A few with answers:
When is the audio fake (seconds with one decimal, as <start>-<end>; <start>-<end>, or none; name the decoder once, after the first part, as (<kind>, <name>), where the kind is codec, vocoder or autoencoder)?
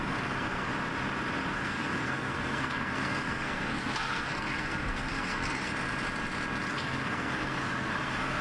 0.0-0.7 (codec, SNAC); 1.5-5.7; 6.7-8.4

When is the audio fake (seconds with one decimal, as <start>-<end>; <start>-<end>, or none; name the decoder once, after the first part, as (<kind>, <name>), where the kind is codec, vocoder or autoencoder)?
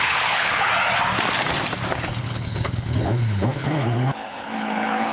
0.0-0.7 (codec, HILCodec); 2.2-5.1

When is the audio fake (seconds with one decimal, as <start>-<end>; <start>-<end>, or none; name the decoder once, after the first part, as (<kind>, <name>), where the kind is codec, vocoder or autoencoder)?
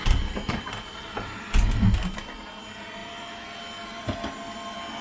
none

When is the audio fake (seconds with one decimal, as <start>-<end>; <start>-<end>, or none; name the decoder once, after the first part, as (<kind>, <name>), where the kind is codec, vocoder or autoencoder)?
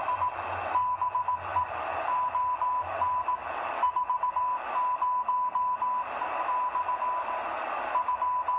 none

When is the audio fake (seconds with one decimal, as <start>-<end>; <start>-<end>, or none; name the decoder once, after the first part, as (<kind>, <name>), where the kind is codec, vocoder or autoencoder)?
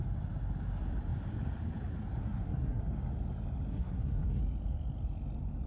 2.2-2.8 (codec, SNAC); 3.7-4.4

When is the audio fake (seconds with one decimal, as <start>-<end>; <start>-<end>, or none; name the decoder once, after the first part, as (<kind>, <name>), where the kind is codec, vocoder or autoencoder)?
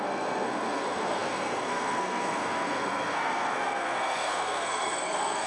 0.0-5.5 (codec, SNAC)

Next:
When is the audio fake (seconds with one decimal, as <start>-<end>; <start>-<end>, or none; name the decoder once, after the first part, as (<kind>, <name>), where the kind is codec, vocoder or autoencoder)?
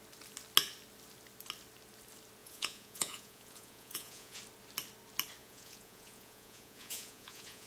2.4-4.4 (vocoder, Vocos); 5.4-7.7